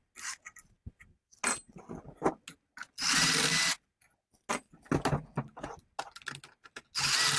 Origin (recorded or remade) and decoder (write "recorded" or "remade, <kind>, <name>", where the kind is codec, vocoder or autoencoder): recorded